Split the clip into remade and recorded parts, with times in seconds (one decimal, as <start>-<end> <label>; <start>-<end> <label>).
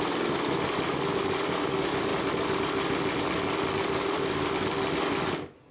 0.0-5.7 recorded